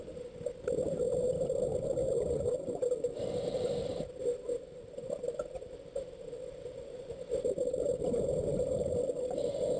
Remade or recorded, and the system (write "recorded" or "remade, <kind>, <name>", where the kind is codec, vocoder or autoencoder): remade, vocoder, BigVGAN v2